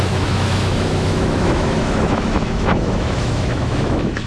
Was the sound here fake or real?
fake